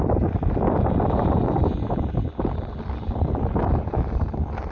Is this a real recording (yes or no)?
yes